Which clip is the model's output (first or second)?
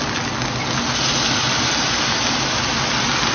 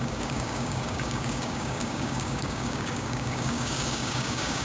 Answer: second